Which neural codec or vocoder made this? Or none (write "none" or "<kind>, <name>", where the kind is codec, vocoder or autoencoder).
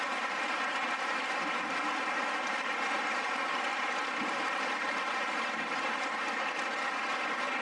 vocoder, BigVGAN v2